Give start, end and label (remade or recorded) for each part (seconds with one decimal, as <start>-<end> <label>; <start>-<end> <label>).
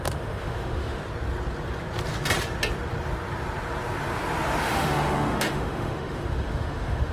0.0-1.0 remade; 1.0-4.6 recorded; 4.6-7.1 remade